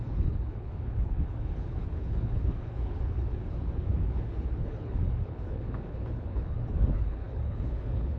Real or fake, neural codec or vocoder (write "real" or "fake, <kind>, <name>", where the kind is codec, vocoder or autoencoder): fake, codec, HILCodec